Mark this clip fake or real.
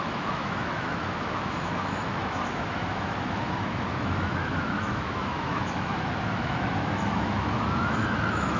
fake